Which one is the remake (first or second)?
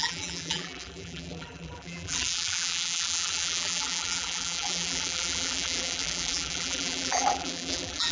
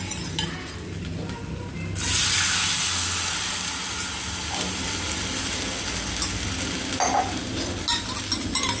first